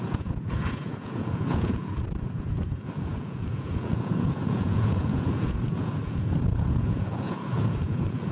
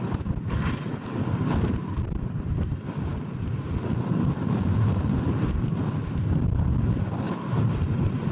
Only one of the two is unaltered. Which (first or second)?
second